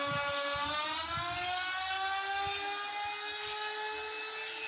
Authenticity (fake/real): real